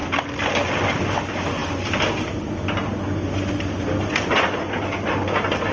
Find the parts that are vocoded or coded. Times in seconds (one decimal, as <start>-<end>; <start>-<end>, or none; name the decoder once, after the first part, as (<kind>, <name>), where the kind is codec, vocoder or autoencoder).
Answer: none